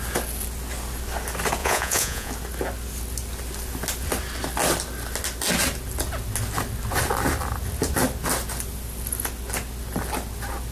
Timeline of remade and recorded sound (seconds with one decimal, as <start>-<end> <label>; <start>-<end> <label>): 0.0-1.6 recorded; 1.6-2.3 remade; 2.3-10.7 recorded

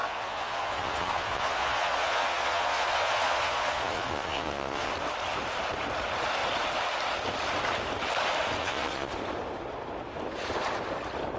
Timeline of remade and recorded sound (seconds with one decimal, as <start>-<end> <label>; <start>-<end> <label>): 0.0-4.9 remade; 4.9-8.6 recorded; 8.6-9.1 remade; 9.1-11.4 recorded

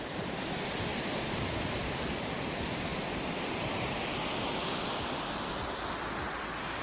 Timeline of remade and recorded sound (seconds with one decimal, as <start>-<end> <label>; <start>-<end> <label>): 0.0-6.8 remade